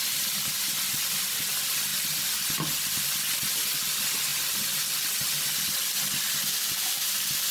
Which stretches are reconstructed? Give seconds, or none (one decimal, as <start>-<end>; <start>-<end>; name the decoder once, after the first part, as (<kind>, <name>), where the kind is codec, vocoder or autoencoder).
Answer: none